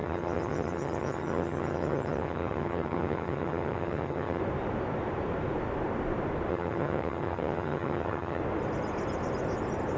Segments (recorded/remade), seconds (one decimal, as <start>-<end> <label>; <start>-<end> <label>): 0.0-4.4 remade; 4.4-6.5 recorded; 6.5-8.4 remade; 8.4-10.0 recorded